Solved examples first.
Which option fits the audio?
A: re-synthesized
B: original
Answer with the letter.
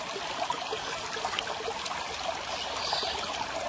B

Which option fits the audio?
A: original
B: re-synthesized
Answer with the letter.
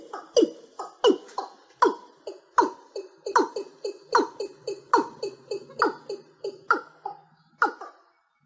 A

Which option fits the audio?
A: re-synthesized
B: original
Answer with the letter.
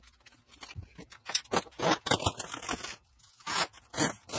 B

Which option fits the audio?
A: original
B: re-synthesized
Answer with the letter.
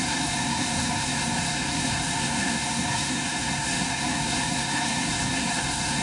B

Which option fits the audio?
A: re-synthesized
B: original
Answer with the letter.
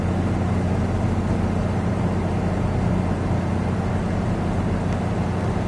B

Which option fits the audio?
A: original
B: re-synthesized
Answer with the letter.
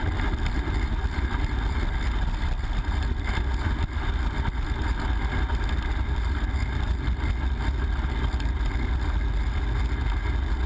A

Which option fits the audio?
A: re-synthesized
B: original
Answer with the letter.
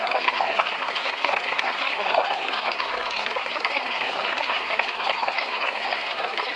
A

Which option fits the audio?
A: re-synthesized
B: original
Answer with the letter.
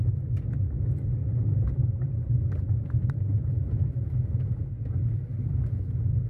B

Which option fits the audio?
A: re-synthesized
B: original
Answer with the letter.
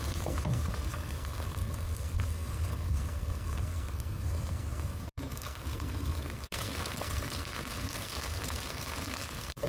A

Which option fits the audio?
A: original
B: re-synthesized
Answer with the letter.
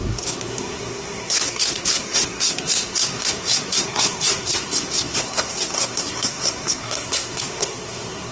B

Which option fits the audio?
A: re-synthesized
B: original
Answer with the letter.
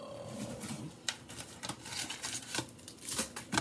B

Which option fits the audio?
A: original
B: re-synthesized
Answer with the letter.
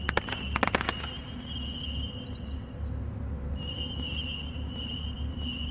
A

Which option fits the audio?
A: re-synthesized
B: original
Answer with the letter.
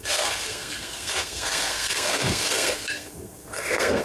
A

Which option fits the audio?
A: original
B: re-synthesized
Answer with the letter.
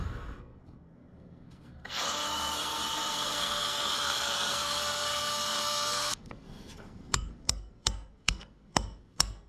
B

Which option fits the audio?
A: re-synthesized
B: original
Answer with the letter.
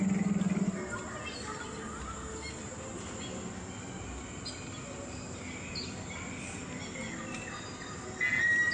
B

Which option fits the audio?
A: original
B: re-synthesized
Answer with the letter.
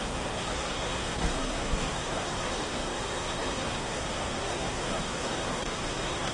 B